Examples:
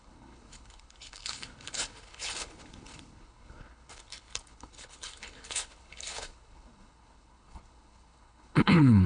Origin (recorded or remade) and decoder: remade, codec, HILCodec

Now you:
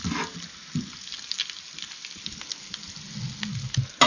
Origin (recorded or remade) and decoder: recorded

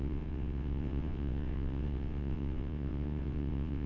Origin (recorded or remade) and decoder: remade, vocoder, WaveNeXt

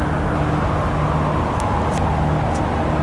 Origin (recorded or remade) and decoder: recorded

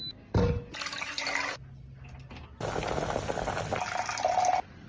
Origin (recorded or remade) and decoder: recorded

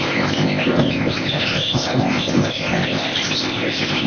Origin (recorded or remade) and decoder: remade, codec, ZipCodec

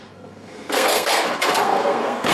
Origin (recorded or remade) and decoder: remade, codec, SNAC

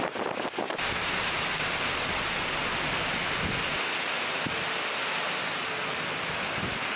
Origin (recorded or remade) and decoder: recorded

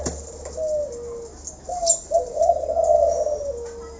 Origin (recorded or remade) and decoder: recorded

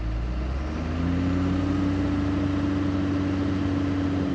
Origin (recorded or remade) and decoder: recorded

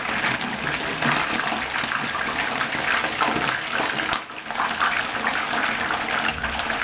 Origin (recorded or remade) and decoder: recorded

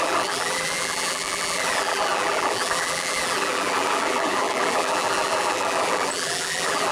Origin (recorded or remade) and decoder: remade, vocoder, BigVGAN v2